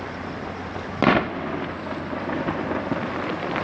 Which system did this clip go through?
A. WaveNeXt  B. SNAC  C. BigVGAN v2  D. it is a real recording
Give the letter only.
C